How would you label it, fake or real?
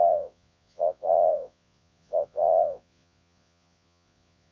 fake